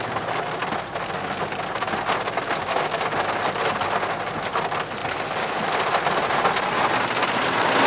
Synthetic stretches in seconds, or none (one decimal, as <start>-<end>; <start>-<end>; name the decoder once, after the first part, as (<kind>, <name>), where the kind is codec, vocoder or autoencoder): none